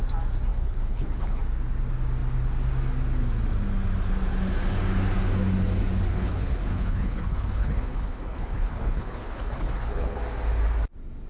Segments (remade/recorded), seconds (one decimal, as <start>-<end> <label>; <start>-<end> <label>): 0.0-0.5 recorded; 0.5-1.4 remade; 1.4-6.1 recorded; 6.1-10.2 remade; 10.2-11.3 recorded